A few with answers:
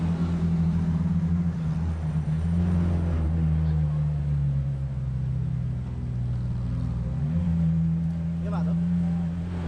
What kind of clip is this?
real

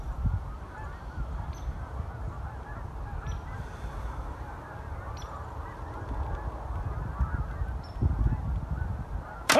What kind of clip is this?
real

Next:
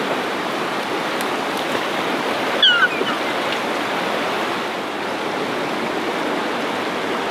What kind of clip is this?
real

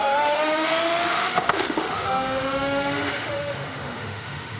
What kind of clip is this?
fake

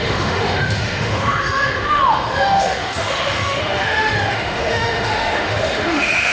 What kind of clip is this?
fake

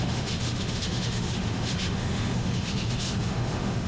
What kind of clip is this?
fake